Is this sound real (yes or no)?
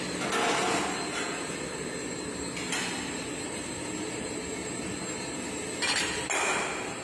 yes